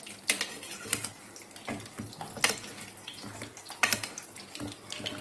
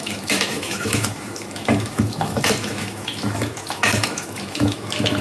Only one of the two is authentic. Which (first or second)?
first